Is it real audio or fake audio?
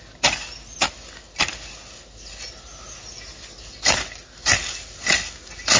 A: real